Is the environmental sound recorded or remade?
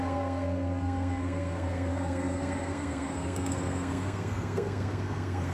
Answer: remade